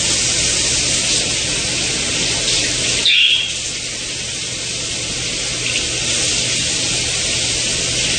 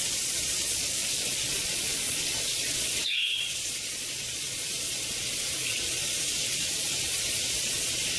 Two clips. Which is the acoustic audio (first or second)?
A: first